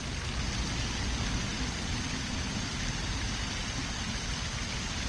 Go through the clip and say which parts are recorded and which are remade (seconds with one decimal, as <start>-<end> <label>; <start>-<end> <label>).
0.0-5.1 recorded

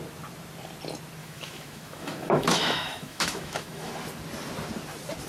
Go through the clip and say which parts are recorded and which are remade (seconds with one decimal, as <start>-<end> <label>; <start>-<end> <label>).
0.0-1.2 recorded; 1.2-3.9 remade; 3.9-5.3 recorded

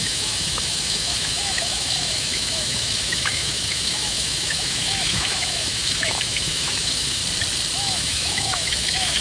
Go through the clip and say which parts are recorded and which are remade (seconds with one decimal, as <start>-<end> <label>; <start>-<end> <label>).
0.0-7.2 remade; 7.2-7.8 recorded; 7.8-9.2 remade

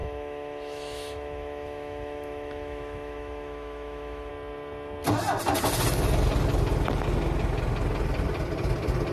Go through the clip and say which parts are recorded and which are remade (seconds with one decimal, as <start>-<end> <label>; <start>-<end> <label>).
0.0-4.3 remade; 4.3-9.1 recorded

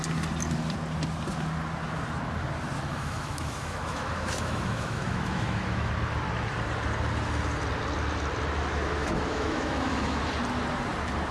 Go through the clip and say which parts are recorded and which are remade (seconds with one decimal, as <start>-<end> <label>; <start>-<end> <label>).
0.0-2.9 recorded; 2.9-5.9 remade; 5.9-9.0 recorded; 9.0-10.2 remade; 10.2-11.3 recorded